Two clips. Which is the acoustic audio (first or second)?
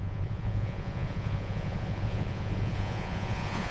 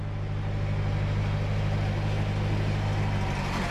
second